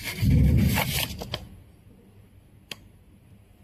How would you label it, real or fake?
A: real